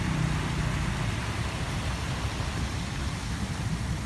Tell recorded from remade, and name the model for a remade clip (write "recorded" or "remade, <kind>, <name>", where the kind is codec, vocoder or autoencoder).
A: recorded